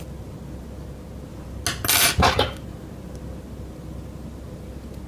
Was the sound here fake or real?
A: real